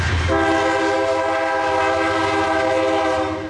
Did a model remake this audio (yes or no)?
no